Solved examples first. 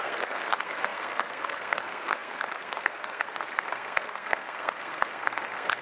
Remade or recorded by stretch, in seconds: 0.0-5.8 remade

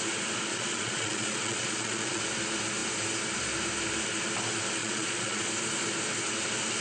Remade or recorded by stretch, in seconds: 0.0-0.5 recorded; 0.5-2.2 remade; 2.2-4.8 recorded; 4.8-5.4 remade; 5.4-6.8 recorded

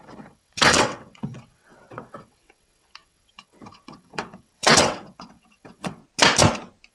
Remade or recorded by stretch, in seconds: 0.0-6.0 remade; 6.0-6.9 recorded

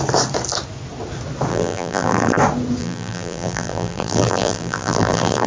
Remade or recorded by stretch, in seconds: 0.0-1.5 recorded; 1.5-2.4 remade; 2.4-2.8 recorded; 2.8-5.5 remade

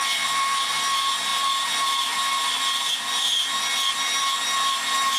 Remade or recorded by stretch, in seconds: 0.0-5.2 recorded

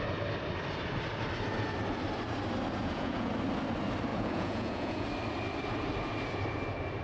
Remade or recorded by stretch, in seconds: 0.0-2.8 recorded; 2.8-3.3 remade; 3.3-4.1 recorded; 4.1-5.1 remade; 5.1-7.0 recorded

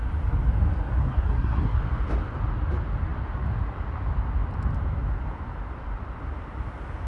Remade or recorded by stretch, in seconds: 0.0-1.0 recorded; 1.0-1.8 remade; 1.8-7.1 recorded